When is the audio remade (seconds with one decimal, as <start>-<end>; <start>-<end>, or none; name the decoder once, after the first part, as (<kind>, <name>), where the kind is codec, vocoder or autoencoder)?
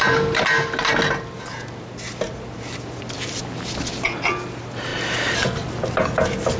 none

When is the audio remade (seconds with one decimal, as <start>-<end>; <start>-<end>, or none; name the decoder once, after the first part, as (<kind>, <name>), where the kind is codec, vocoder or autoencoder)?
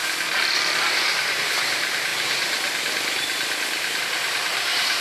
1.3-2.1 (vocoder, BigVGAN v2); 4.0-5.0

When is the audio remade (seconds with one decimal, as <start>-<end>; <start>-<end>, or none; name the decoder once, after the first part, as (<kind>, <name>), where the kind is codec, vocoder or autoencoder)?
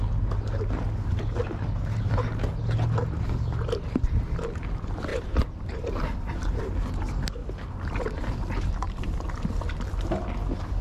5.1-5.9 (vocoder, BigVGAN v2); 7.4-8.0